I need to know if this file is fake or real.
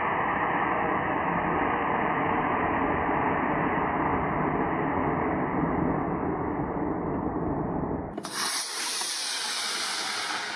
real